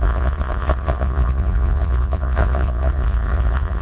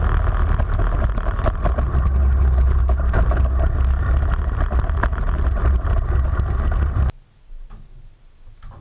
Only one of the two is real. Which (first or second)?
second